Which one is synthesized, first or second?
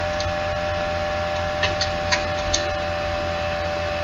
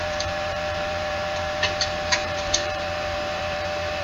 second